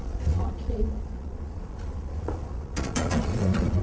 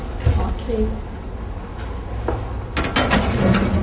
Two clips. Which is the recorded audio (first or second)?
second